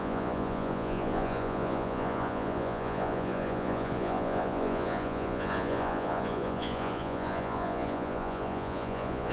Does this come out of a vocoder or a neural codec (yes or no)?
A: yes